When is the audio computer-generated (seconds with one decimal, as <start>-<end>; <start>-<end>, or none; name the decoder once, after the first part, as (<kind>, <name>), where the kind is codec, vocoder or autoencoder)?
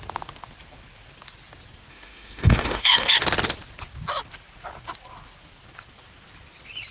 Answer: 1.9-3.1 (autoencoder, DAC-VAE)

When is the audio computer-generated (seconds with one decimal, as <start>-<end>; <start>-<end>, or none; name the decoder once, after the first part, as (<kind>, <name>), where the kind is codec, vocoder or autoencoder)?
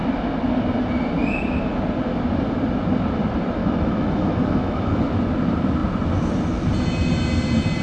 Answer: 3.6-5.0 (autoencoder, DAC-VAE)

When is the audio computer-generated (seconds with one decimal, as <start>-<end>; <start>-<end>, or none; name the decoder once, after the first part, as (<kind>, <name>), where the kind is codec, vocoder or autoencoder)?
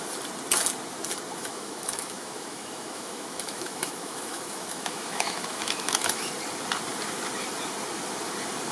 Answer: 1.4-6.3 (autoencoder, DAC-VAE)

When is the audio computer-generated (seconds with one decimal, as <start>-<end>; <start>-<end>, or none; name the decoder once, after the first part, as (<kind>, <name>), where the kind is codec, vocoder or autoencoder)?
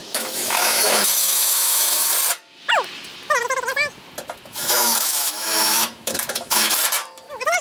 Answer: 0.0-2.1 (autoencoder, DAC-VAE); 4.5-6.7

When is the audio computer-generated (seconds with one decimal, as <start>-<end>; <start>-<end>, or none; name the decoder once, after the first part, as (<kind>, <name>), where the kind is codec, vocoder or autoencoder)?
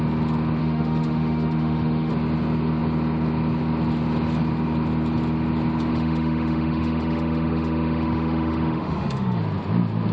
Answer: 0.6-2.1 (autoencoder, DAC-VAE); 5.9-9.4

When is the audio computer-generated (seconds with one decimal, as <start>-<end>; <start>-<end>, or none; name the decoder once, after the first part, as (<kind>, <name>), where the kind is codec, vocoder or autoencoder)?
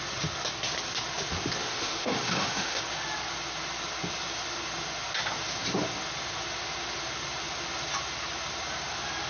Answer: 1.6-2.8 (autoencoder, DAC-VAE)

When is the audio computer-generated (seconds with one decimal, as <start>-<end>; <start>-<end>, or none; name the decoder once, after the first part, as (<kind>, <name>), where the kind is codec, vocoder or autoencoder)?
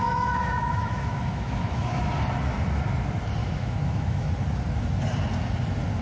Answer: 0.0-2.1 (autoencoder, DAC-VAE); 3.4-4.3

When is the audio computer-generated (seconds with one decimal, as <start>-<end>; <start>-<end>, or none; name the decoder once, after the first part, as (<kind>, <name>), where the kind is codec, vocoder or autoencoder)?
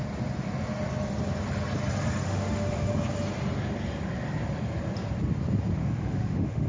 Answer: 2.2-2.9 (autoencoder, DAC-VAE); 5.8-6.7